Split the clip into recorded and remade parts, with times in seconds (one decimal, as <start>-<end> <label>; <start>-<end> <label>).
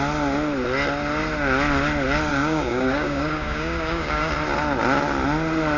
0.0-2.3 recorded; 2.3-4.3 remade; 4.3-5.8 recorded